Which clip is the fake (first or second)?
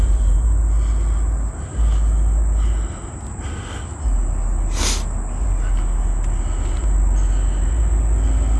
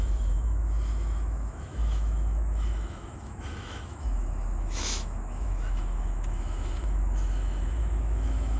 second